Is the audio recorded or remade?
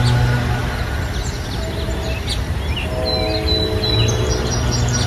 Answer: recorded